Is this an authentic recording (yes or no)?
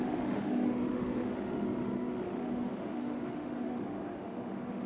no